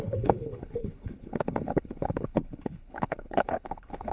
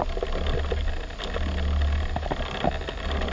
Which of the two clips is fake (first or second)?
first